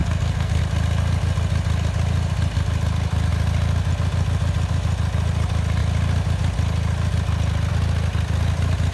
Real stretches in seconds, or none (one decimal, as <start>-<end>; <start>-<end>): 0.6-8.9